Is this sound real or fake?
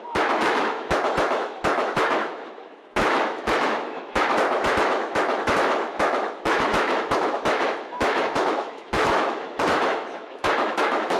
fake